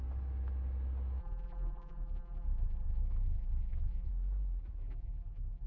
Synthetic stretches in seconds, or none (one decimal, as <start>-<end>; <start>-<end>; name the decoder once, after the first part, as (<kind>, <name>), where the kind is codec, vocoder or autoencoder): 1.2-4.1 (vocoder, BigVGAN v2); 4.8-5.7